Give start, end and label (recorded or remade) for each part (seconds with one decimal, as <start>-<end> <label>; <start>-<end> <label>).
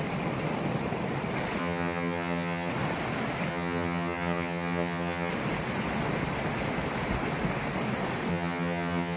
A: 0.0-1.6 recorded; 1.6-2.7 remade; 2.7-3.5 recorded; 3.5-5.3 remade; 5.3-8.3 recorded; 8.3-9.2 remade